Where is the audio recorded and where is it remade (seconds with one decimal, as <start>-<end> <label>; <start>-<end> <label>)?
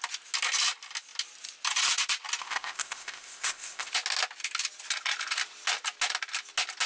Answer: 0.0-2.4 recorded; 2.4-3.9 remade; 3.9-6.9 recorded